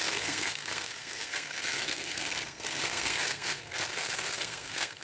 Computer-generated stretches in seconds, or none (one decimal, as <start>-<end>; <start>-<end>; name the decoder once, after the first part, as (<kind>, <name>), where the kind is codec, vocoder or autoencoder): 0.0-5.0 (codec, SNAC)